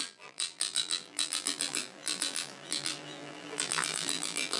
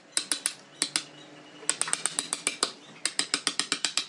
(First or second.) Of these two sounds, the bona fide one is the second